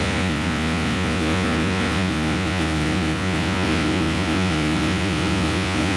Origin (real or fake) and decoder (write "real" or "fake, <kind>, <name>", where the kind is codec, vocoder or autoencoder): fake, vocoder, Vocos